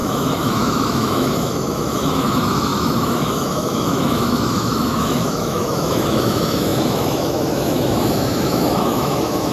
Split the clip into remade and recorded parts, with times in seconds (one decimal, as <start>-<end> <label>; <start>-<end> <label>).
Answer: 0.0-9.5 remade